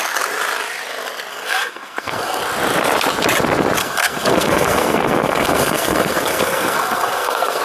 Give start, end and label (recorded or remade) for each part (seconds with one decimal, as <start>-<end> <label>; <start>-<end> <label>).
0.0-1.3 recorded; 1.3-2.4 remade; 2.4-3.8 recorded; 3.8-7.6 remade